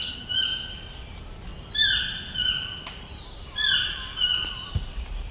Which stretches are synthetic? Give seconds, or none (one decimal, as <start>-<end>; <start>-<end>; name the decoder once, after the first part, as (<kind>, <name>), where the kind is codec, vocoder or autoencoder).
none